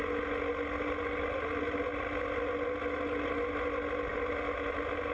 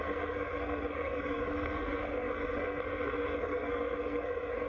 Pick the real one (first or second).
first